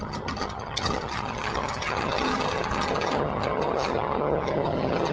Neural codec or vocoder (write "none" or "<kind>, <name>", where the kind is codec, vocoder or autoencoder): vocoder, HiFi-GAN